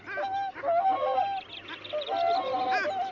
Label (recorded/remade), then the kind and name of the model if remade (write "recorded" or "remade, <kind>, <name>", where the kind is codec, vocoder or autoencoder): recorded